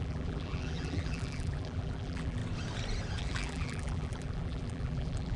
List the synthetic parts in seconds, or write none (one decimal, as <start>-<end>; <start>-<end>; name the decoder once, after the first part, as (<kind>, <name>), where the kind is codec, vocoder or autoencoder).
0.0-2.4 (vocoder, BigVGAN v2); 3.2-5.4

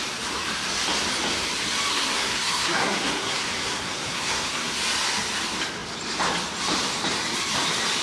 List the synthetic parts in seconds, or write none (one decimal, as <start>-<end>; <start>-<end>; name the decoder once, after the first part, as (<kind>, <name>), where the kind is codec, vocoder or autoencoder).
1.9-4.8 (codec, SNAC)